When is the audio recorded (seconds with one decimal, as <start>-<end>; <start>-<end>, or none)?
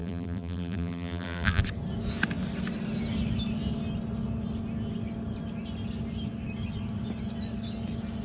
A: 1.6-8.2